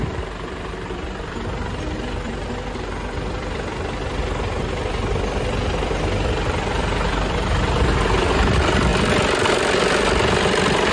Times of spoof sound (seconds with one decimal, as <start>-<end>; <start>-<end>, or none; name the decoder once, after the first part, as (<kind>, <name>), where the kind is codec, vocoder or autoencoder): 0.0-8.9 (vocoder, BigVGAN v2); 9.5-10.9